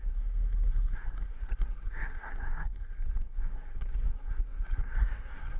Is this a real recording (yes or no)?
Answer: no